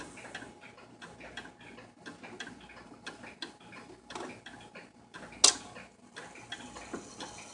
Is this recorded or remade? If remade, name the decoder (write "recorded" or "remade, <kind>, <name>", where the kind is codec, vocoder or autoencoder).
recorded